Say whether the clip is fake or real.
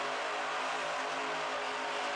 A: real